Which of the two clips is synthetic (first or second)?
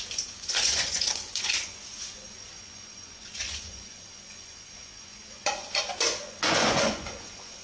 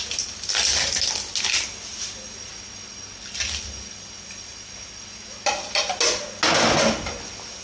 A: first